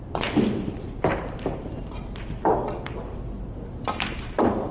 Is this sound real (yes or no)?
yes